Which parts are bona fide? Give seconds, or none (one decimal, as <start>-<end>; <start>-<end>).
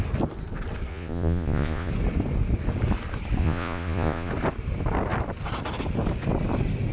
0.0-0.9; 1.9-3.4; 4.3-6.9